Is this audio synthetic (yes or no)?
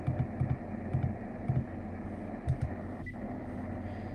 no